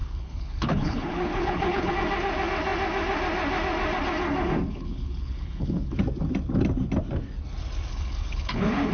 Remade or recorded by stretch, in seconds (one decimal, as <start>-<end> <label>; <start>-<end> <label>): 0.0-1.9 remade; 1.9-4.7 recorded; 4.7-6.0 remade; 6.0-7.9 recorded; 7.9-8.9 remade